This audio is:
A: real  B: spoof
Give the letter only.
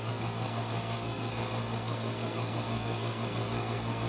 B